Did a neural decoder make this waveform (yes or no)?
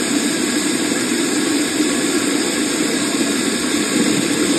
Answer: yes